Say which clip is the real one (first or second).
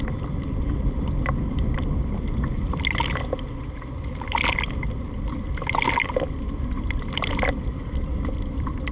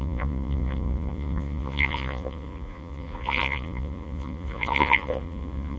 first